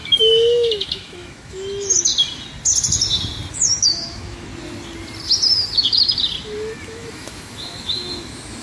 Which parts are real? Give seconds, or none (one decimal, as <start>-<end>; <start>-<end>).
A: 2.1-3.5; 4.5-6.8